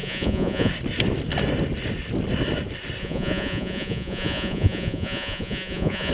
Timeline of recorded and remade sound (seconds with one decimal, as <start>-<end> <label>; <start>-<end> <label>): 0.0-0.7 remade; 0.7-3.0 recorded; 3.0-6.1 remade